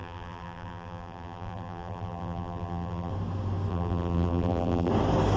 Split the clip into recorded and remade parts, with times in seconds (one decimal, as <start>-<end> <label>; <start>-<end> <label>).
0.0-3.1 remade; 3.1-3.7 recorded; 3.7-4.9 remade; 4.9-5.4 recorded